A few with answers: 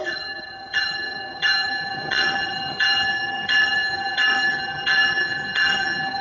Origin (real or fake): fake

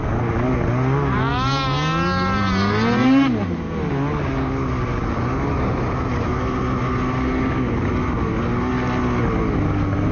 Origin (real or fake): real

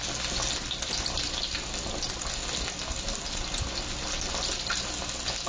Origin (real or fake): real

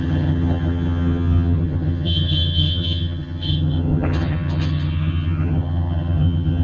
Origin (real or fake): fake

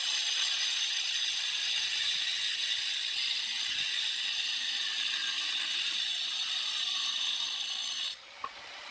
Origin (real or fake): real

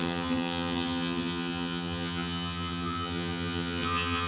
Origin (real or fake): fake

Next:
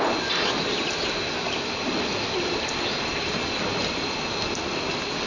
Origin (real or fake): real